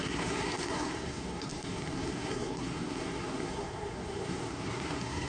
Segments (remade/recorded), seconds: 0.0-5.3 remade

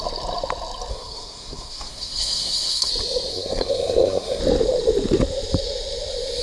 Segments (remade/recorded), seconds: 0.0-0.9 recorded; 0.9-2.9 remade; 2.9-3.3 recorded; 3.3-4.4 remade; 4.4-6.4 recorded

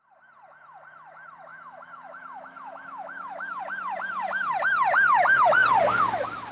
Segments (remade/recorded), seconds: 0.0-1.5 recorded; 1.5-3.6 remade; 3.6-6.5 recorded

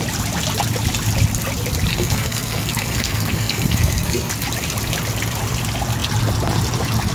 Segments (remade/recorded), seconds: 0.0-1.9 recorded; 1.9-4.3 remade; 4.3-7.1 recorded

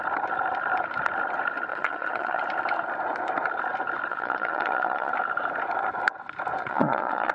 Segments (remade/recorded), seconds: 0.0-1.7 recorded; 1.7-2.4 remade; 2.4-4.1 recorded; 4.1-5.1 remade; 5.1-6.6 recorded; 6.6-7.3 remade

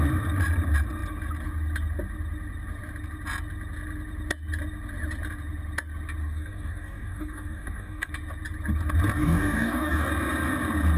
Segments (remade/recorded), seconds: 0.0-6.2 recorded; 6.2-8.1 remade; 8.1-9.2 recorded; 9.2-10.1 remade; 10.1-11.0 recorded